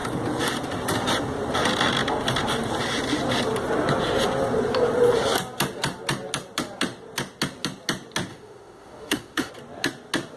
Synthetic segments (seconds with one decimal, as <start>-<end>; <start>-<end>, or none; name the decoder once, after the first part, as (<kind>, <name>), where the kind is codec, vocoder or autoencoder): 8.3-9.5 (autoencoder, DAC-VAE)